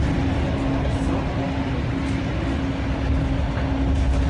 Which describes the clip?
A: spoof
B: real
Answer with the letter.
B